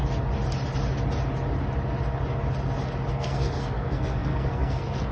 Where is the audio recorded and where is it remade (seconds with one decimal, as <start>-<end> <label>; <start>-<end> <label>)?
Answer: 0.0-3.1 recorded; 3.1-5.1 remade